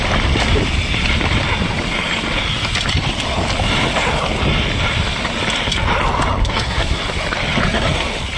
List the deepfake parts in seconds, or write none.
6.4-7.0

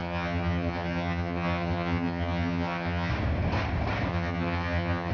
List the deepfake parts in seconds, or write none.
0.0-3.1; 4.1-5.1

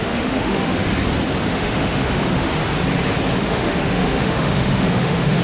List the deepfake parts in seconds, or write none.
0.0-0.9; 1.4-2.6; 3.4-5.4

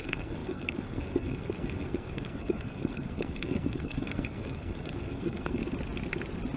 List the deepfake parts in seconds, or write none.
0.0-5.6

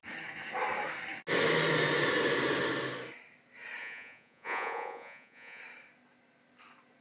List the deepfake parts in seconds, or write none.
3.8-5.6